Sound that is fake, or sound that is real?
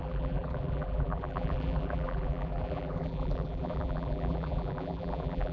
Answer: fake